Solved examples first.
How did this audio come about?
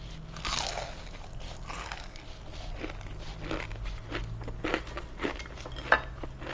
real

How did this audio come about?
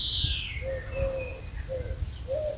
real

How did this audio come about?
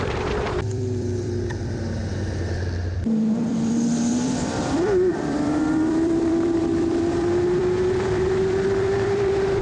fake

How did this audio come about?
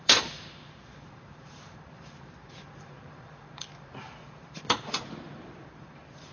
fake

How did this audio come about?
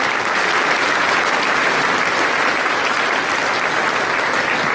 real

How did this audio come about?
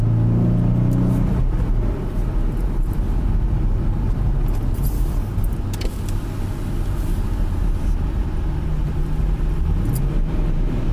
real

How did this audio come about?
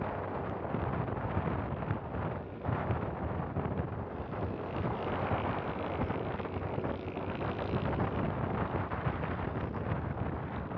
real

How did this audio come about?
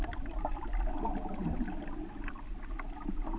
real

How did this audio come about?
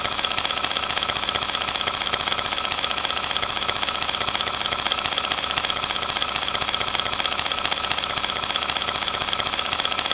fake